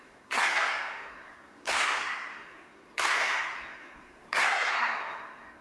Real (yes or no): no